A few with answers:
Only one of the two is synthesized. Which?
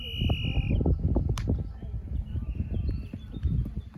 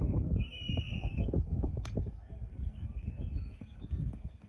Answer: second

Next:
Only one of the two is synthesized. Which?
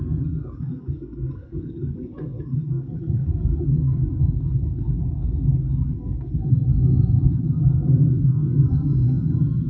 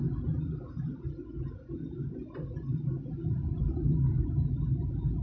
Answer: first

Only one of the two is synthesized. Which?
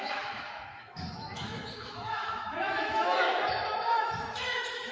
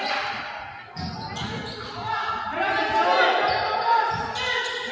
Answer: first